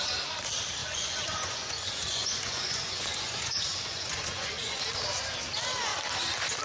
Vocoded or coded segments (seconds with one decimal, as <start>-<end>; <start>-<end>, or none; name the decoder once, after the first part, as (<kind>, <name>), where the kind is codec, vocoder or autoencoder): 0.8-4.8 (vocoder, Vocos)